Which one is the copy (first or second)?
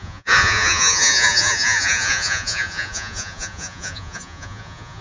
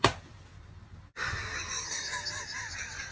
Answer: first